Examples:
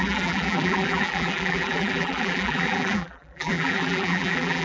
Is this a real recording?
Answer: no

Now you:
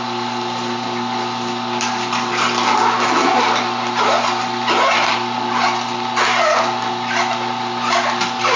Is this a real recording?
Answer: yes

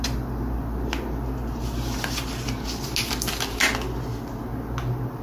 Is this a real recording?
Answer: yes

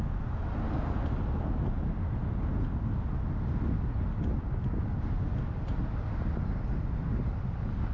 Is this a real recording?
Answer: yes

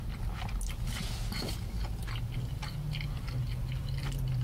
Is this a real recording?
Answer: yes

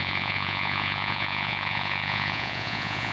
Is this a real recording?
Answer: no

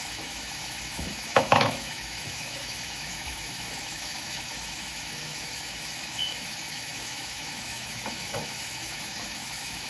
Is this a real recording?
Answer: no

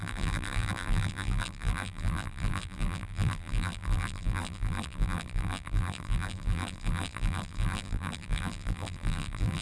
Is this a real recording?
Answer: no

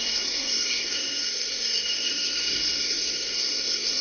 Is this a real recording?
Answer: no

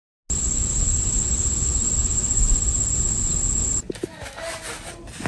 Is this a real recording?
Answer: yes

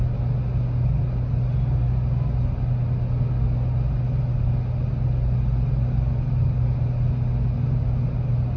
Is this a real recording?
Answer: yes